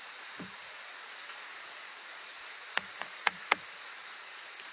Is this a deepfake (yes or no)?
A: yes